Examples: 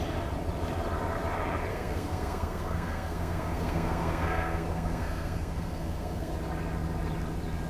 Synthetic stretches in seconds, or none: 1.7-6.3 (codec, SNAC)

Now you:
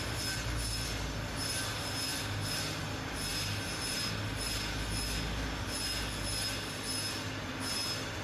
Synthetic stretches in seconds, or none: none

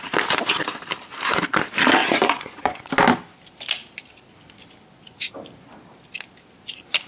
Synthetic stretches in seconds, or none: 2.0-2.9 (vocoder, Vocos)

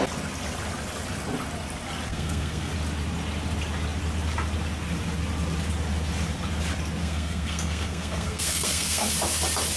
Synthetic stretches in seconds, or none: 2.1-2.7 (codec, SNAC); 7.0-9.1

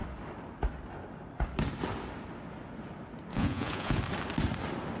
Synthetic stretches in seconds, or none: 3.3-4.0 (vocoder, Vocos)

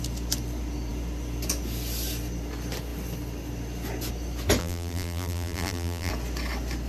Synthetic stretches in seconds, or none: 4.6-6.1 (vocoder, BigVGAN v2)

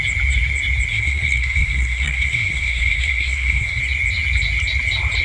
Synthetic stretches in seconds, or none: 0.9-3.8 (codec, SNAC)

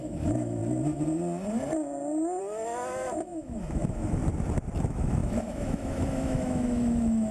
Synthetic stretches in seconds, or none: 0.0-0.6 (autoencoder, DAC-VAE); 2.4-4.2; 4.8-7.3